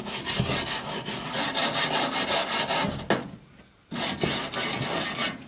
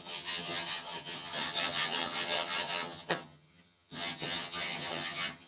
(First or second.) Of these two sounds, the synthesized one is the second